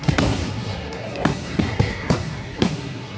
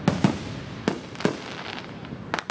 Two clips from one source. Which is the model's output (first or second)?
first